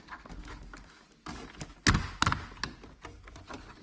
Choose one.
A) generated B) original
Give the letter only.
B